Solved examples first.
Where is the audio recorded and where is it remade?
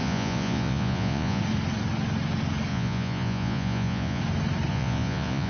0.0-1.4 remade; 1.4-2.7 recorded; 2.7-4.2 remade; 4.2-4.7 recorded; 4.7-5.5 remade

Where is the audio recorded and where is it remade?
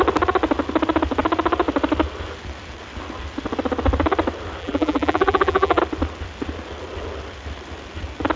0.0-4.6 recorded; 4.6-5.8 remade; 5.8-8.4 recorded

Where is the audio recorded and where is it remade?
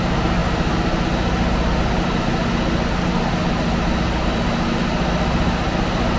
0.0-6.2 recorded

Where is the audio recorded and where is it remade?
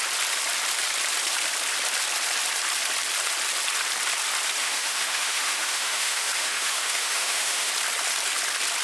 0.0-4.6 recorded; 4.6-7.7 remade; 7.7-8.8 recorded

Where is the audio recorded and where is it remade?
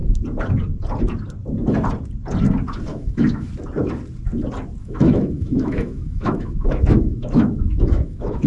0.0-2.9 recorded; 2.9-3.5 remade; 3.5-4.8 recorded; 4.8-8.5 remade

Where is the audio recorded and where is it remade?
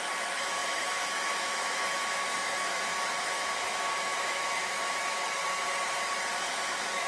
0.0-5.4 remade; 5.4-6.5 recorded; 6.5-7.1 remade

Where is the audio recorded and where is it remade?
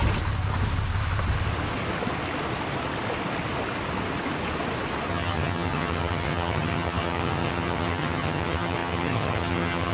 0.0-5.1 recorded; 5.1-9.9 remade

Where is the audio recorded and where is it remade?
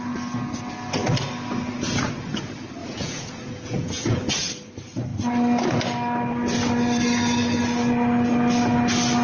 0.0-2.8 recorded; 2.8-4.5 remade; 4.5-9.2 recorded